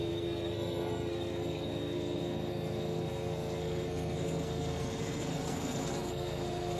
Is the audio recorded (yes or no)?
no